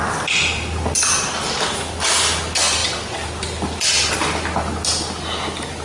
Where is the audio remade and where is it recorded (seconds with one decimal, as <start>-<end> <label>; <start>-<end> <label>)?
0.0-5.8 recorded

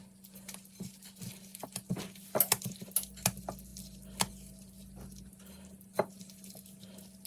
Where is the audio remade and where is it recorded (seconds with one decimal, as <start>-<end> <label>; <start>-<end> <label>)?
0.0-7.3 recorded